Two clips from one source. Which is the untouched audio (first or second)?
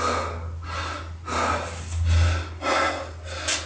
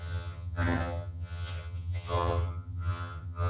first